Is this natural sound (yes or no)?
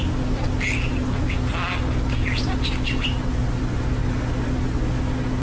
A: yes